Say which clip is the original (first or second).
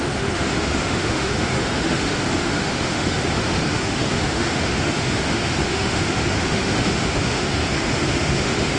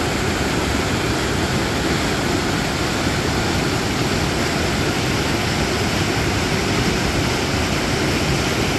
second